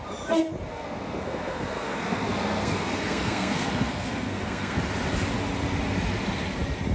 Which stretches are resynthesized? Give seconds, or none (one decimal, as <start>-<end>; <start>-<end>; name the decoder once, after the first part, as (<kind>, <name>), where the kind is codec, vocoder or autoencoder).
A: 0.7-4.8 (codec, SNAC)